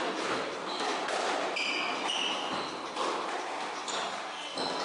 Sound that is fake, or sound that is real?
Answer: real